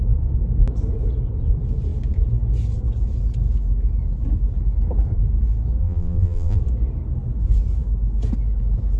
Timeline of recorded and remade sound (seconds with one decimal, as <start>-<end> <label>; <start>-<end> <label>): 0.0-5.8 recorded; 5.8-6.6 remade; 6.6-9.0 recorded